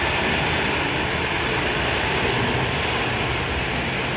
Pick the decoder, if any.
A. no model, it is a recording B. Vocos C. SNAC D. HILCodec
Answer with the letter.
A